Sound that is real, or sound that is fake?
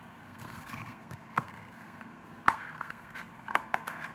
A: fake